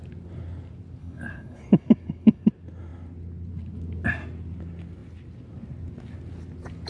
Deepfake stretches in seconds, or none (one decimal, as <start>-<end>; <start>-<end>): 1.0-2.5